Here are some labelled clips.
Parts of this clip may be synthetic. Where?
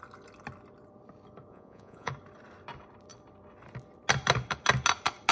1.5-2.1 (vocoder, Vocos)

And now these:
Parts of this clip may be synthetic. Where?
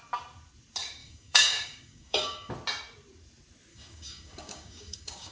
1.0-2.5 (codec, DAC); 3.7-5.3